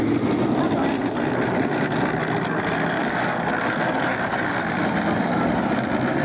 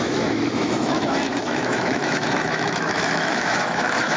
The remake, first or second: second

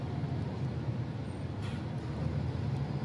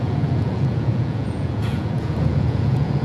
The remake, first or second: second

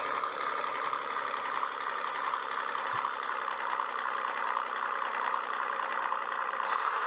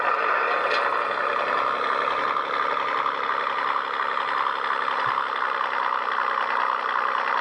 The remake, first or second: first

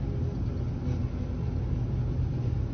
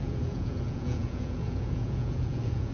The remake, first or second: second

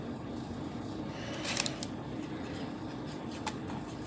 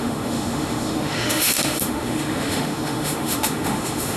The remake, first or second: second